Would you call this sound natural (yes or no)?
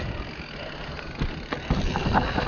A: yes